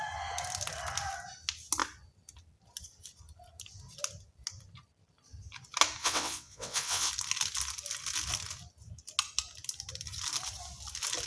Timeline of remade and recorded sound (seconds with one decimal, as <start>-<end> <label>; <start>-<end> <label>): 0.0-6.0 recorded; 6.0-7.1 remade; 7.1-11.3 recorded